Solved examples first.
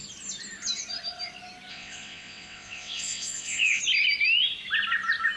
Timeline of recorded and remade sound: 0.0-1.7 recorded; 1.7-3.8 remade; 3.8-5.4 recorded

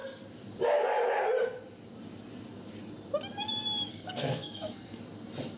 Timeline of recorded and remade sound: 0.0-3.9 recorded; 3.9-5.0 remade; 5.0-5.6 recorded